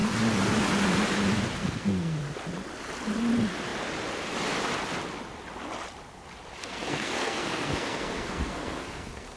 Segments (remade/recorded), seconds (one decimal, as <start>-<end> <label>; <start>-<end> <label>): 0.0-1.6 recorded; 1.6-2.2 remade; 2.2-6.6 recorded; 6.6-9.4 remade